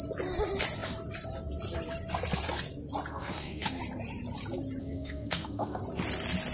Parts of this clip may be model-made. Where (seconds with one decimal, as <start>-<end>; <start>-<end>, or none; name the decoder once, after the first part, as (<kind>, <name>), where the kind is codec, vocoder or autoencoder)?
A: 3.1-3.8 (codec, SNAC); 4.8-5.8